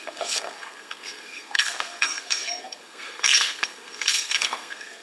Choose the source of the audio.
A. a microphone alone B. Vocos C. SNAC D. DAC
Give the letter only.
C